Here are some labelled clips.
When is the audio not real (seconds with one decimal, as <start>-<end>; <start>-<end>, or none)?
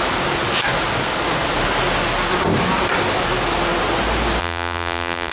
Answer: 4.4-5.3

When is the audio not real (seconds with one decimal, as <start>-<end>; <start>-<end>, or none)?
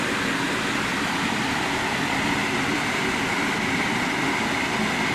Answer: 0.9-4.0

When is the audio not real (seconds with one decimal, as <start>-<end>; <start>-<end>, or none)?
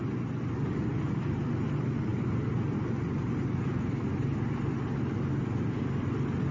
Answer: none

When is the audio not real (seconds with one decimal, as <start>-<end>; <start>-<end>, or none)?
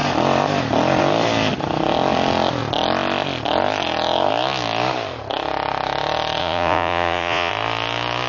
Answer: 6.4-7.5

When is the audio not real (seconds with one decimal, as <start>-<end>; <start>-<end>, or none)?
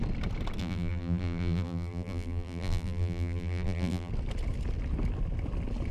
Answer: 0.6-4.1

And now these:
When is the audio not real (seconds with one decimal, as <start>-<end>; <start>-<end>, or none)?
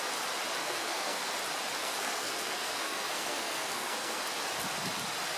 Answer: 0.6-1.3; 1.8-4.2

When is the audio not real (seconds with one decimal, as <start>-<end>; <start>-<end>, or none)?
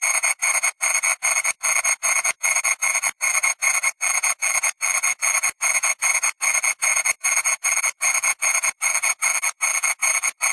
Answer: 0.0-10.5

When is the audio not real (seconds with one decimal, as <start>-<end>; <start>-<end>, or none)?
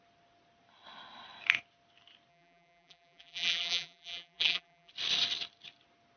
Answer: 2.3-4.9